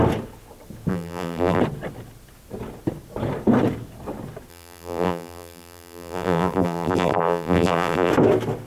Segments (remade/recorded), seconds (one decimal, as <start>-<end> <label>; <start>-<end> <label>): 0.0-0.9 recorded; 0.9-1.6 remade; 1.6-4.5 recorded; 4.5-8.1 remade; 8.1-8.7 recorded